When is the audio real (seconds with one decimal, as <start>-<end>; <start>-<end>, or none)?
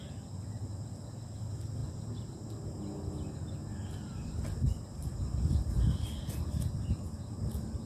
0.0-7.9